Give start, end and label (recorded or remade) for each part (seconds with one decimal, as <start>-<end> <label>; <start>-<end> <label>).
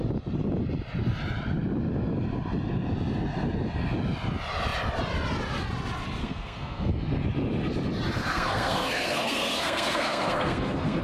0.0-6.2 recorded; 6.2-6.9 remade; 6.9-8.2 recorded; 8.2-11.0 remade